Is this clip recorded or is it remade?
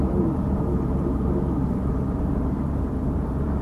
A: remade